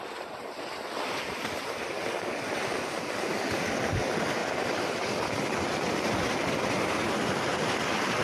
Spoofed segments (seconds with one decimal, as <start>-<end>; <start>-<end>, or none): 4.4-5.2; 7.5-8.2